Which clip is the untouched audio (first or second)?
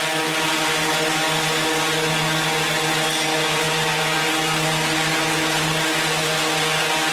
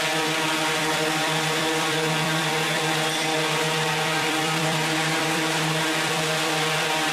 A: first